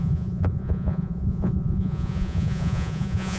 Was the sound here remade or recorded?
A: remade